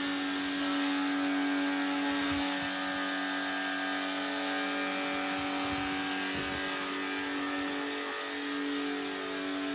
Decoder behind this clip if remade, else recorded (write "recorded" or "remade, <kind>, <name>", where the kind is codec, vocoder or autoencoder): recorded